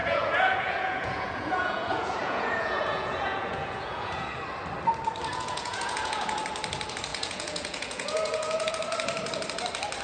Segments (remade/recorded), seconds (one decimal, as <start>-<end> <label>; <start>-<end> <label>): 0.0-4.3 remade; 4.3-5.3 recorded; 5.3-6.4 remade; 6.4-7.1 recorded; 7.1-8.7 remade; 8.7-10.0 recorded